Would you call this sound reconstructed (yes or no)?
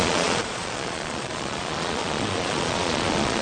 yes